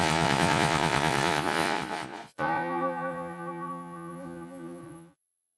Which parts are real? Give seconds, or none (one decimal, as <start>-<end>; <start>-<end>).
none